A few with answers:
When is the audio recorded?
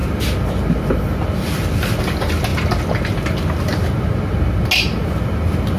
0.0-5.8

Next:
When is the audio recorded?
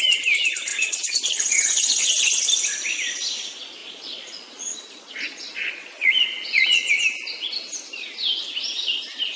0.0-0.7; 2.4-3.8; 6.9-9.4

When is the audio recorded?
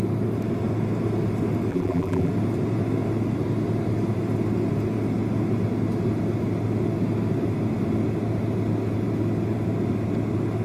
0.0-1.7; 2.3-10.6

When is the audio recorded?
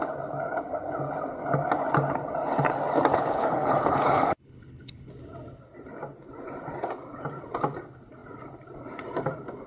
0.0-3.1; 5.1-9.7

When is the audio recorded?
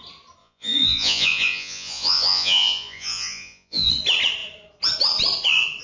0.0-0.4; 3.9-5.8